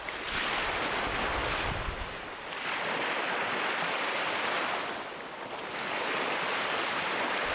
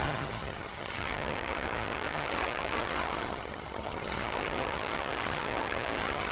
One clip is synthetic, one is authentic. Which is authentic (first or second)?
first